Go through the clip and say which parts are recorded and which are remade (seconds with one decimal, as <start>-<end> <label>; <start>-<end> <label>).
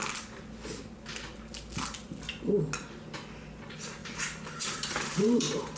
0.0-4.0 recorded; 4.0-5.8 remade